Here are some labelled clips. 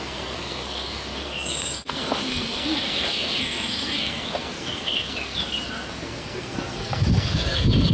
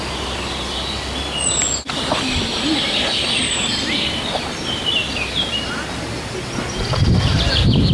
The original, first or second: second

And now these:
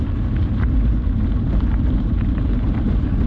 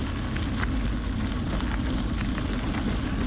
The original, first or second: second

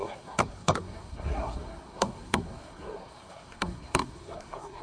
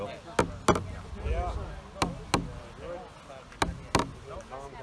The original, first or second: second